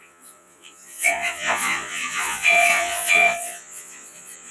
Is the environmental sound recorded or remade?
remade